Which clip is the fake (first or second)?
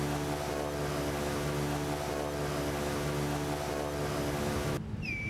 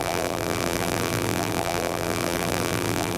second